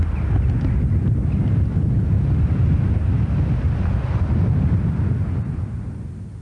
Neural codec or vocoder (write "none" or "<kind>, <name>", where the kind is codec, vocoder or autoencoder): none